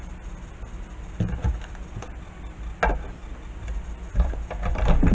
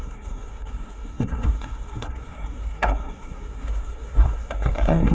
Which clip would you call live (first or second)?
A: first